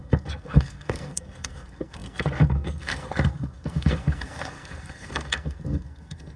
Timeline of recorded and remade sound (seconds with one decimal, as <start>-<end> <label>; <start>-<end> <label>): 0.0-6.4 remade